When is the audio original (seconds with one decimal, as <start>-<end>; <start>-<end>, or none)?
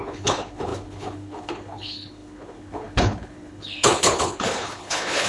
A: none